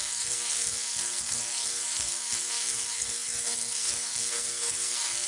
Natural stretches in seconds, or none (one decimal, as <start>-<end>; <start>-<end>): none